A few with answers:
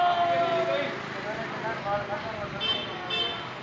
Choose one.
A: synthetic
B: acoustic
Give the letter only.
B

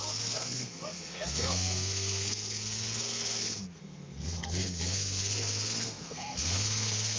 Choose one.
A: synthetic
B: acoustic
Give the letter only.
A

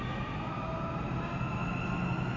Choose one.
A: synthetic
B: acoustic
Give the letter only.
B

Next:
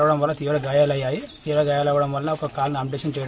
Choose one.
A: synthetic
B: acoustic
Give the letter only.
B